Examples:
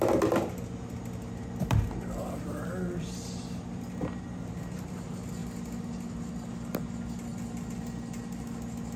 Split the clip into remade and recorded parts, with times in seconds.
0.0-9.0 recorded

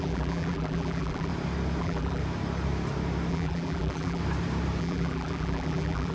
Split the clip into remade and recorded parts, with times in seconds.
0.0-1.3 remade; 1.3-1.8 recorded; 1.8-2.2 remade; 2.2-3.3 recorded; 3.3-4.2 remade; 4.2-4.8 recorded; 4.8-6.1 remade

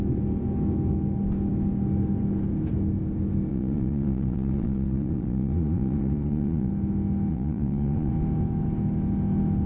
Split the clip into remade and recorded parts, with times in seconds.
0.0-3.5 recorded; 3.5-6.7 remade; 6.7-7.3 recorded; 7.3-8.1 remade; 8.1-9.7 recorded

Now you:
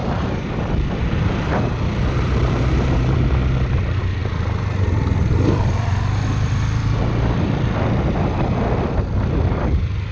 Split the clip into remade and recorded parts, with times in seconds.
0.0-3.4 remade; 3.4-10.1 recorded

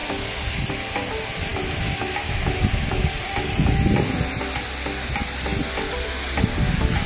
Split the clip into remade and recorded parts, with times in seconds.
0.0-7.1 recorded

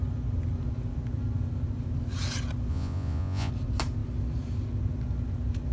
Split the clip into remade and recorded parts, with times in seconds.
0.0-2.7 recorded; 2.7-3.5 remade; 3.5-5.7 recorded